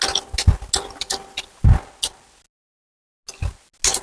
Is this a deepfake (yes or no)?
no